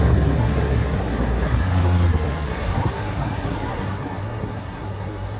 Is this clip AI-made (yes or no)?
yes